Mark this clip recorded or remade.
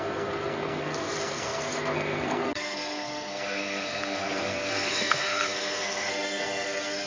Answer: remade